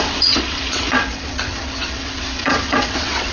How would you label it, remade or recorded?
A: remade